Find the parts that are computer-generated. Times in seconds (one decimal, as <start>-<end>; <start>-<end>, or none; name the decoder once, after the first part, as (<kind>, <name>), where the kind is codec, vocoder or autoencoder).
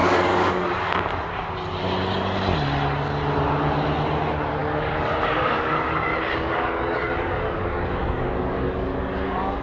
0.0-1.1 (codec, DAC); 4.6-9.6